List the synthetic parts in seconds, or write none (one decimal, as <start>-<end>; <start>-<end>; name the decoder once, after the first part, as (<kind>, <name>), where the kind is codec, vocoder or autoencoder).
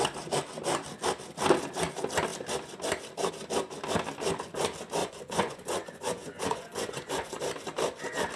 5.0-7.4 (vocoder, Vocos)